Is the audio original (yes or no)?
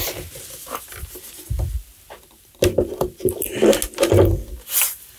yes